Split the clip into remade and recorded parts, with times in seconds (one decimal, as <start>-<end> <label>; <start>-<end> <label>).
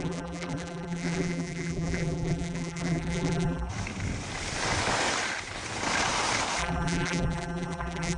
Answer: 0.0-3.7 remade; 3.7-6.6 recorded; 6.6-8.2 remade